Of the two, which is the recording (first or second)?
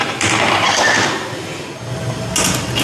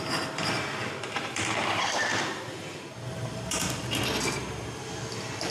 first